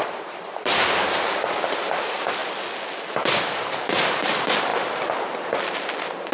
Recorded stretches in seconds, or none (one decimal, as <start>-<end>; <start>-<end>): 2.4-2.9

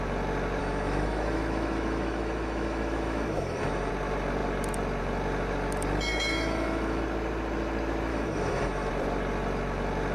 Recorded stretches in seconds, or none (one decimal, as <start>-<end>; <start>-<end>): 0.0-0.6; 3.9-6.1; 7.0-8.1; 8.9-10.1

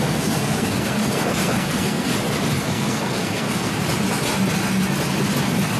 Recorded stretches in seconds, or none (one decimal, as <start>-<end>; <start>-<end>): 2.1-2.6; 3.7-5.8

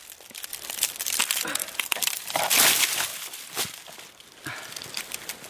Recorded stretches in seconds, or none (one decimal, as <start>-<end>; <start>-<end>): 0.0-0.5; 1.2-1.6; 2.4-3.1; 4.2-5.5

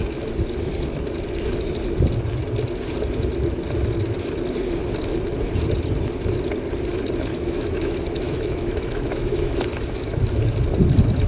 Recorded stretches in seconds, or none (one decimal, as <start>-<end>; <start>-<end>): 0.0-7.3; 10.2-11.3